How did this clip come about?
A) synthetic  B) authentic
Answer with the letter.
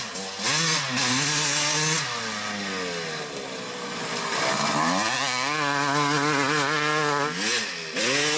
B